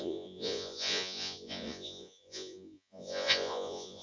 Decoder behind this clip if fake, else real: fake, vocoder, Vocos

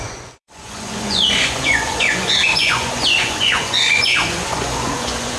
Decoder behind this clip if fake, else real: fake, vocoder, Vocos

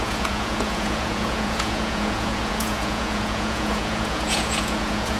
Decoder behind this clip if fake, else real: fake, vocoder, Vocos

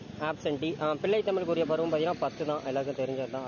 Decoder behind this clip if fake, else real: real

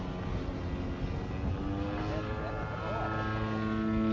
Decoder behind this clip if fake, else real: real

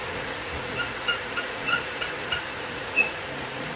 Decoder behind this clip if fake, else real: fake, vocoder, Vocos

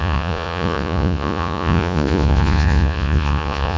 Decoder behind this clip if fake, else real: fake, vocoder, Vocos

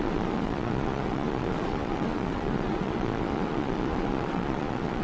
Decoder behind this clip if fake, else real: fake, vocoder, Vocos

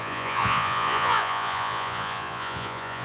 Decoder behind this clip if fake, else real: fake, vocoder, Vocos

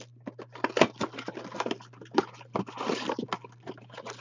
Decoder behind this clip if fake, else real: real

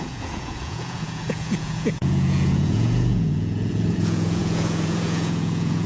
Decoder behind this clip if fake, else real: fake, vocoder, Vocos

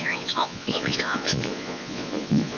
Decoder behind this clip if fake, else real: fake, vocoder, Vocos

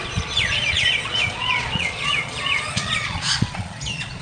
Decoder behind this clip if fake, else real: fake, vocoder, Vocos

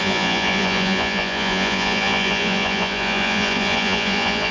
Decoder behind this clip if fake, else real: fake, vocoder, Vocos